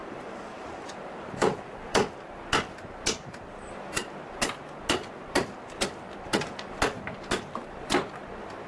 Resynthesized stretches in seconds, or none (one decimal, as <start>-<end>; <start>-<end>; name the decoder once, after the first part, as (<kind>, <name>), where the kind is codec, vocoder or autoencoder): 0.0-2.2 (vocoder, BigVGAN v2)

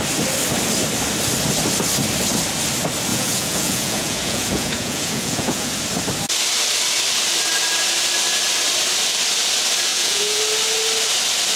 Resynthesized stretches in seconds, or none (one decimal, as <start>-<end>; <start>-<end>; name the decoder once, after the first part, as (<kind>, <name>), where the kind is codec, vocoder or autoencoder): 3.1-5.7 (vocoder, Vocos); 9.9-10.4

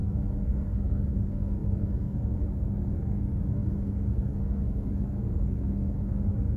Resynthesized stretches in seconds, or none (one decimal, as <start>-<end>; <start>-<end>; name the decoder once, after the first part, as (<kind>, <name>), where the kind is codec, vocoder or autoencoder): 0.0-6.6 (codec, SNAC)

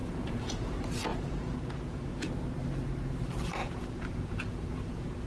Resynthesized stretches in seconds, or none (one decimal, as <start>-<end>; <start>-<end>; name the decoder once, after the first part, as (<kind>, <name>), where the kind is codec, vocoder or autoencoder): 0.0-0.7 (vocoder, Vocos); 1.1-2.3; 3.6-5.3